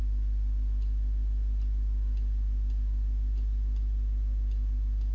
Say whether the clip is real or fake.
real